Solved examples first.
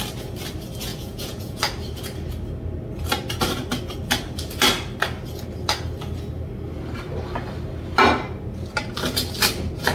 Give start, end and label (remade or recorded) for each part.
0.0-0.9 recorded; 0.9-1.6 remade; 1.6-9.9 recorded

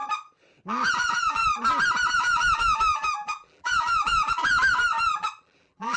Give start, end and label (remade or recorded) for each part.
0.0-0.9 recorded; 0.9-1.4 remade; 1.4-2.1 recorded; 2.1-4.7 remade; 4.7-5.2 recorded; 5.2-6.0 remade

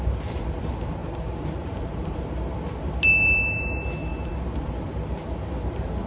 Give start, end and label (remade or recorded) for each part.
0.0-6.1 recorded

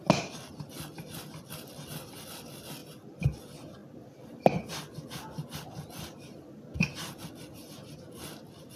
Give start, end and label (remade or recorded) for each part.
0.0-8.8 recorded

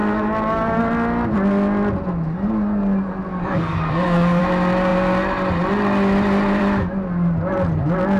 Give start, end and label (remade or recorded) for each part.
0.0-0.8 remade; 0.8-3.3 recorded; 3.3-4.4 remade; 4.4-8.2 recorded